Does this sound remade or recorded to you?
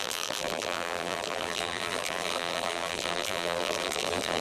remade